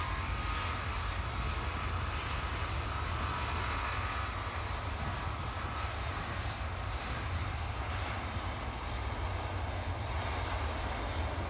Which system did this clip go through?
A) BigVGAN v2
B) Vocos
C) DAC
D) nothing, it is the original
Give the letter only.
D